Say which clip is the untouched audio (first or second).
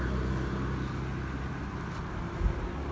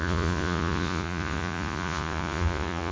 first